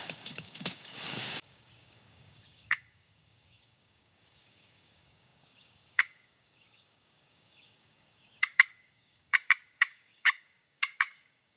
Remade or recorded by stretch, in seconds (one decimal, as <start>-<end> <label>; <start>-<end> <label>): 0.0-11.6 remade